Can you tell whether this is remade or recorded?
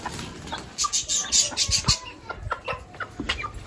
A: recorded